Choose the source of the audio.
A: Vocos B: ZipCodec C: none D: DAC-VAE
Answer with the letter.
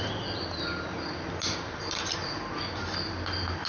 C